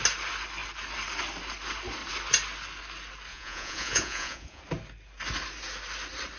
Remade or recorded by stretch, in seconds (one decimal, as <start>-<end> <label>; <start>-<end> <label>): 0.0-3.3 recorded; 3.3-4.6 remade; 4.6-6.4 recorded